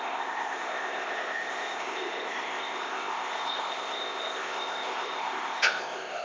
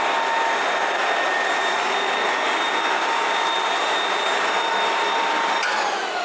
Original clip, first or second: second